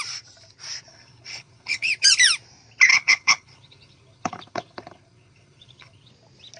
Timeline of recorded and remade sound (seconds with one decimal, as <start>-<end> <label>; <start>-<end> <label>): 0.0-0.9 recorded; 0.9-1.9 remade; 1.9-2.9 recorded; 2.9-6.1 remade; 6.1-6.6 recorded